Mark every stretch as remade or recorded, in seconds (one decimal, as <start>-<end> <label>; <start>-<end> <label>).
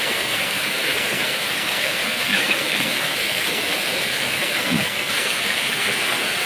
0.0-6.5 remade